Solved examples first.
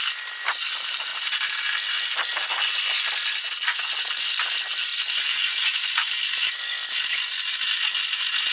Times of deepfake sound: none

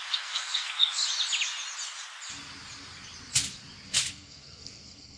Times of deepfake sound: 0.0-1.0 (codec, SNAC); 4.1-5.2

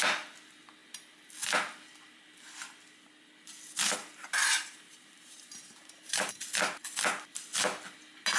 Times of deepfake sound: 4.0-6.4 (vocoder, BigVGAN v2)

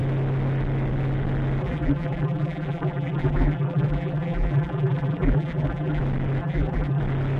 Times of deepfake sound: 1.6-6.0 (vocoder, BigVGAN v2); 6.4-7.0

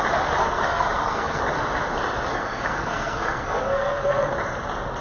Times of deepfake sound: 0.4-1.4 (codec, SNAC); 2.3-4.3